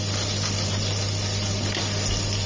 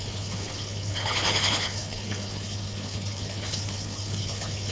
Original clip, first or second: first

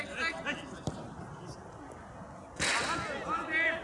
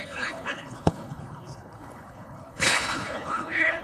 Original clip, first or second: first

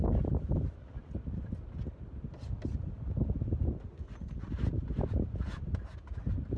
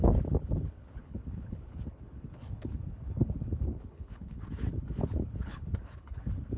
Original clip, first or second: first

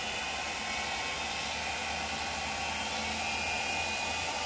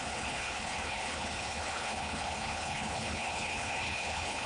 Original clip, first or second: first